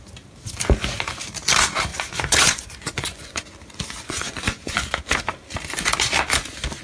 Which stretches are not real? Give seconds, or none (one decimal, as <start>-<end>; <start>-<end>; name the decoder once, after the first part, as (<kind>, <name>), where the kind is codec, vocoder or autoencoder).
1.9-3.4 (vocoder, Vocos); 4.0-4.9